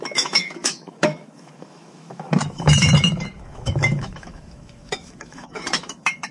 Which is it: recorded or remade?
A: remade